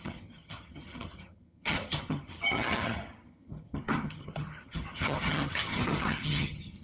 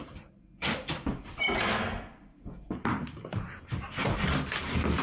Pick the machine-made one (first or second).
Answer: first